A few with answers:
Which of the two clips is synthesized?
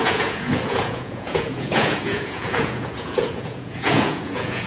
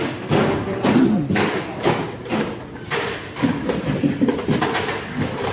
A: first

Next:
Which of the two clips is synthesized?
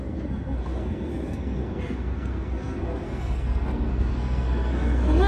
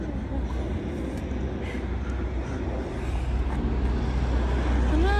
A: first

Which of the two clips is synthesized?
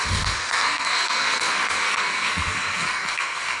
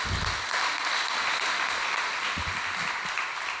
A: first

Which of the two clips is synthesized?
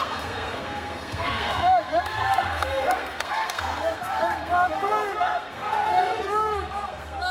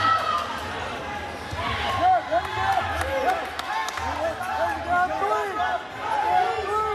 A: first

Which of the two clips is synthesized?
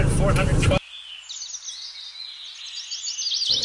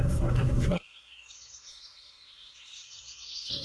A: second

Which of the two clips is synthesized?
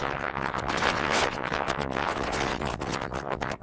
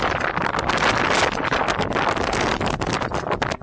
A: first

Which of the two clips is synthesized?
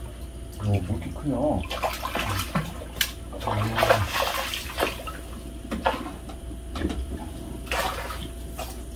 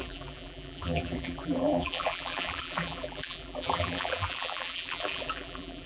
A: second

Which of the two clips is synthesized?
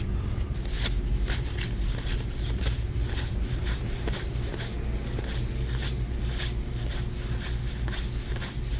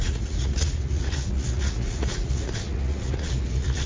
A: second